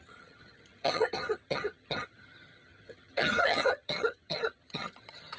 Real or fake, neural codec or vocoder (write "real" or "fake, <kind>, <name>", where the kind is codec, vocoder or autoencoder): fake, vocoder, HiFi-GAN